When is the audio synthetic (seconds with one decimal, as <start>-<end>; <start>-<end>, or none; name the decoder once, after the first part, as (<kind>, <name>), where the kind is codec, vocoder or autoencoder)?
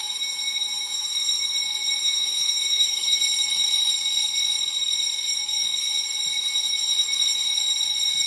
0.0-1.1 (autoencoder, DAC-VAE); 2.0-3.2